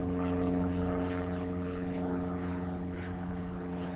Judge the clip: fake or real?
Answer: fake